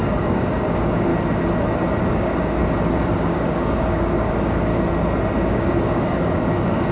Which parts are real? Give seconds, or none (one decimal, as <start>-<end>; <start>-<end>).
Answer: 1.1-2.1; 2.6-3.2; 4.7-5.5

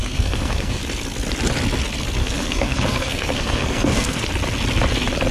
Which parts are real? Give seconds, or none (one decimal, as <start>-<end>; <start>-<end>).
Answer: 0.8-2.2; 4.2-5.3